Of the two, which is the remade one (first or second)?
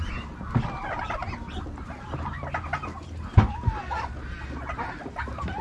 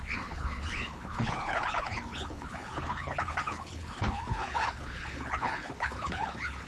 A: second